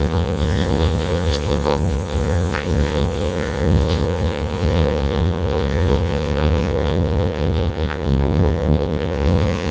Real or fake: fake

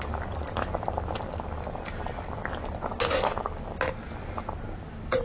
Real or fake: real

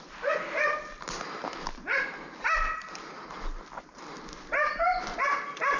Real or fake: real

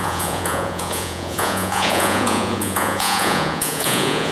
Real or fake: fake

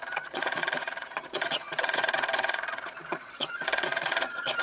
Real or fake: fake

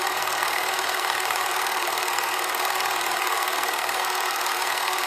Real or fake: fake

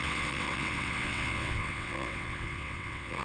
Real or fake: fake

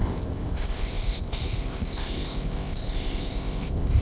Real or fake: fake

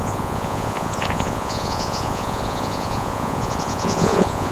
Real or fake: fake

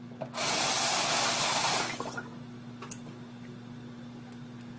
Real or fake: real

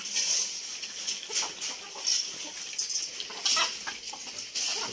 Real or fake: real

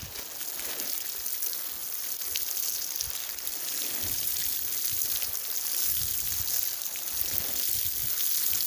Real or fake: real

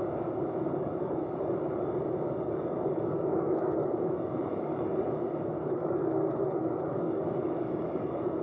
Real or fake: fake